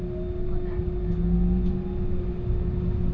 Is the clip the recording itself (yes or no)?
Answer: yes